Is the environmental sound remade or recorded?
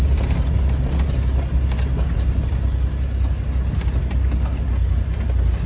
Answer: recorded